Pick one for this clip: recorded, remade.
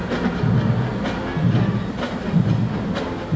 recorded